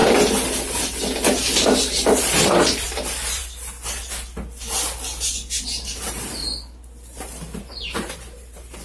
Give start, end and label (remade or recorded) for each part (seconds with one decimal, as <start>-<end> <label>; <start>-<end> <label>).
0.0-2.2 recorded; 2.2-3.4 remade; 3.4-5.6 recorded; 5.6-6.4 remade; 6.4-7.6 recorded; 7.6-8.8 remade